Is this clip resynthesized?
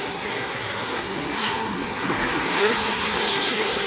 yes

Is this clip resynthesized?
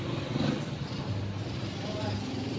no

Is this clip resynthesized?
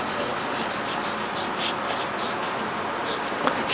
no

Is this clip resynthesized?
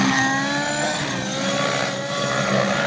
no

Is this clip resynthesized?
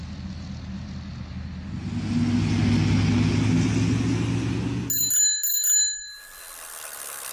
no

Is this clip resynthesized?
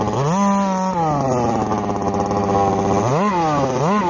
no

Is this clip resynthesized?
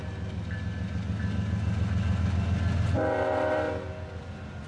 no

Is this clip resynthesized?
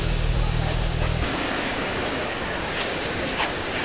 yes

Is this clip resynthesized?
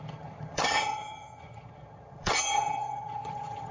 yes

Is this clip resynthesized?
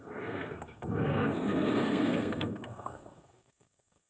yes